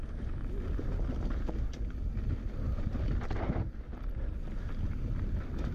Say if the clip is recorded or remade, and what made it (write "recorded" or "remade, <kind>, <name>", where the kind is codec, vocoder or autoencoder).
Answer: recorded